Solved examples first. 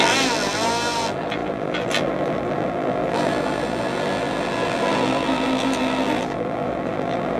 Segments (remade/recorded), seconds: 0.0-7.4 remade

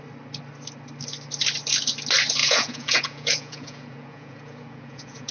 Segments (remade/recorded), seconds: 0.0-2.4 recorded; 2.4-5.3 remade